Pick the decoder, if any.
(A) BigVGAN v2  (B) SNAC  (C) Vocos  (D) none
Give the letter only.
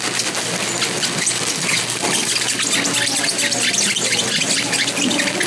D